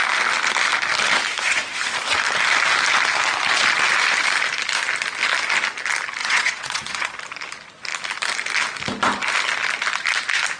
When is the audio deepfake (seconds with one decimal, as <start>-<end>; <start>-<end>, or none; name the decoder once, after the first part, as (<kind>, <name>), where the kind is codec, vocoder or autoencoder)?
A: 6.2-7.0 (vocoder, WaveNeXt)